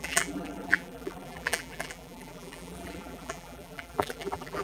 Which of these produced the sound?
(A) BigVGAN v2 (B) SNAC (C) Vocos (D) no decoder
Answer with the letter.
A